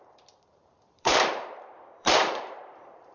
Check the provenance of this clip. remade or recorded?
remade